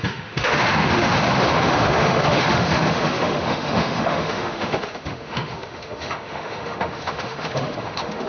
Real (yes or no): no